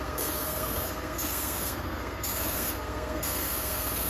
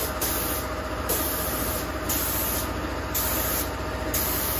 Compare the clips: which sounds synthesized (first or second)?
first